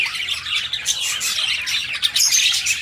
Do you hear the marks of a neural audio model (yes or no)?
no